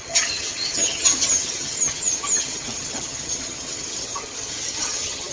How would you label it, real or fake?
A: fake